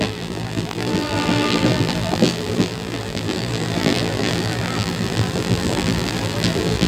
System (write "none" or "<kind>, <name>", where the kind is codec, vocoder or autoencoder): vocoder, BigVGAN v2